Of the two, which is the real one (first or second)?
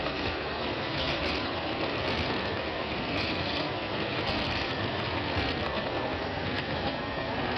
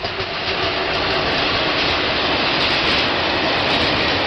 second